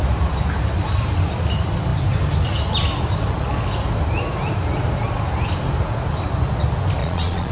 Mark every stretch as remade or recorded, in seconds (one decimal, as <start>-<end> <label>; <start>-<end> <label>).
0.0-7.0 recorded; 7.0-7.5 remade